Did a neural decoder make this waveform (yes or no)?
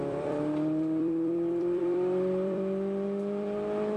yes